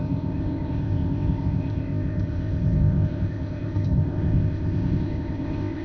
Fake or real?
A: fake